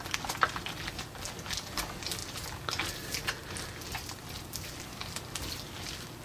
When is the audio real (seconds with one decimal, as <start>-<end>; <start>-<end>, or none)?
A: 0.0-6.2